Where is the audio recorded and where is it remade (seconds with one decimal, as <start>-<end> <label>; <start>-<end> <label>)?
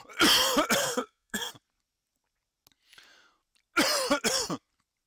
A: 0.0-0.8 recorded; 0.8-1.5 remade; 1.5-5.1 recorded